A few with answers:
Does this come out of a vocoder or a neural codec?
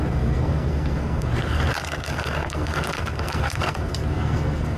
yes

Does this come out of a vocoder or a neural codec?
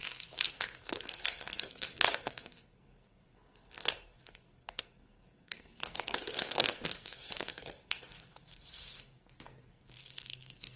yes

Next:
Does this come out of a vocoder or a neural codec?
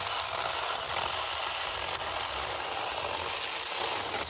no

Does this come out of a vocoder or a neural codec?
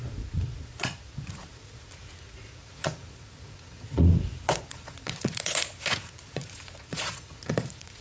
yes